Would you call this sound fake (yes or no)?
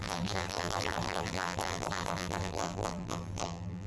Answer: yes